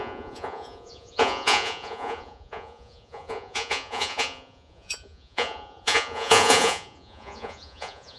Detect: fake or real fake